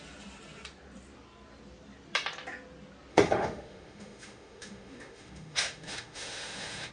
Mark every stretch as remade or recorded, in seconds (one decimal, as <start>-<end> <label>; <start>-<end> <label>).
0.0-3.1 recorded; 3.1-6.9 remade